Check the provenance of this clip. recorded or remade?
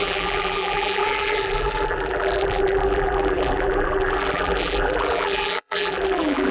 remade